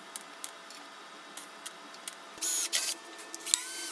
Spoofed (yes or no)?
no